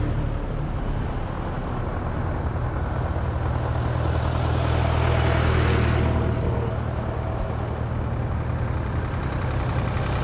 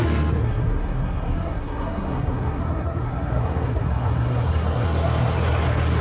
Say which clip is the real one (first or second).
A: first